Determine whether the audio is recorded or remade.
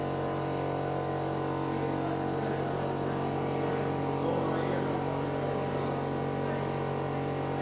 recorded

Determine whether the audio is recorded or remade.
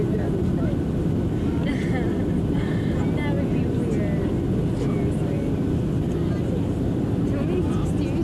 recorded